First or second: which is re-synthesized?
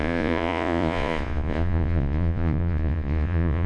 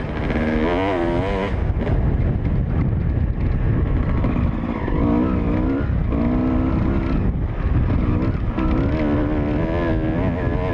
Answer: first